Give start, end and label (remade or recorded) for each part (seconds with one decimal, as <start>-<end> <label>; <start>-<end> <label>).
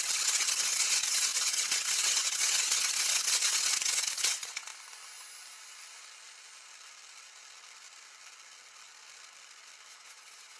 0.0-4.7 remade; 4.7-9.9 recorded; 9.9-10.6 remade